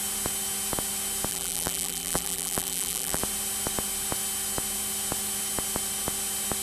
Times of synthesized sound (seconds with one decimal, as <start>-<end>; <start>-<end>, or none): 1.3-3.2